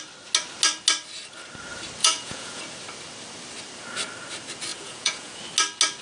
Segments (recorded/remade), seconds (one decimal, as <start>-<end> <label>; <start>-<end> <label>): 0.0-2.0 recorded; 2.0-2.6 remade; 2.6-4.7 recorded; 4.7-5.4 remade; 5.4-6.0 recorded